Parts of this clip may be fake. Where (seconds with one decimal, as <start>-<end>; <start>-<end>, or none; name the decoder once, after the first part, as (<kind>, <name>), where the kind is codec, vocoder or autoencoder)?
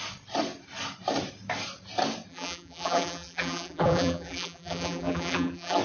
2.3-5.8 (vocoder, BigVGAN v2)